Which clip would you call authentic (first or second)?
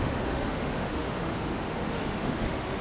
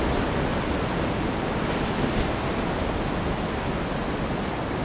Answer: second